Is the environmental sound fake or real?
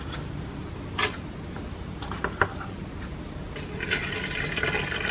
real